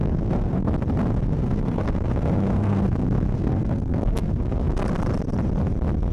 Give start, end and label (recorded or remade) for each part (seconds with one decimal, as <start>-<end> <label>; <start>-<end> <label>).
0.0-0.7 remade; 0.7-1.1 recorded; 1.1-4.8 remade; 4.8-6.1 recorded